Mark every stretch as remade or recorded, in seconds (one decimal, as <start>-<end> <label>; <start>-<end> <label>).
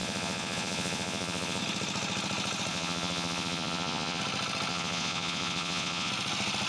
0.0-1.6 remade; 1.6-2.7 recorded; 2.7-4.2 remade; 4.2-4.7 recorded; 4.7-6.1 remade; 6.1-6.7 recorded